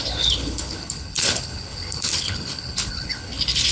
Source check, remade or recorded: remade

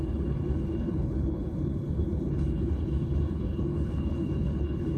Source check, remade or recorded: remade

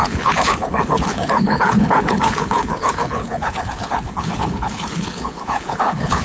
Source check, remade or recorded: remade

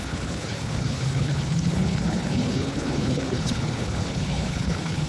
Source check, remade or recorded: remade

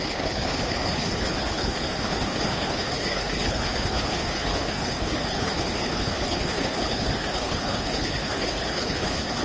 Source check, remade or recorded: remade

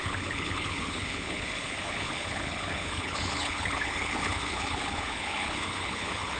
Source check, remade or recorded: remade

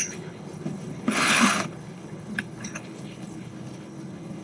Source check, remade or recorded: remade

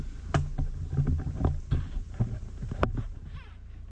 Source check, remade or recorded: recorded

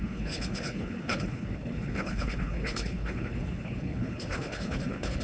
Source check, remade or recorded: remade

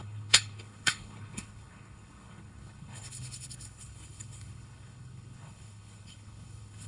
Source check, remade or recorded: remade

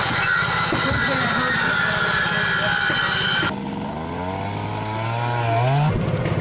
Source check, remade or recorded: recorded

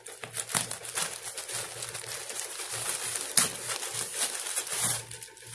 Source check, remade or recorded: recorded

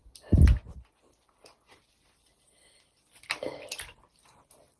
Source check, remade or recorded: recorded